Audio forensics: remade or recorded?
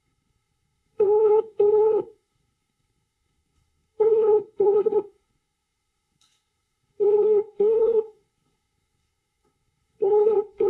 remade